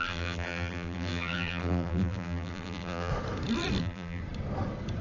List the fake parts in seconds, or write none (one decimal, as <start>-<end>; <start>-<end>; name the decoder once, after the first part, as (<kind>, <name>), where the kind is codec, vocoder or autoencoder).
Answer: 0.0-3.1 (vocoder, BigVGAN v2); 3.8-4.2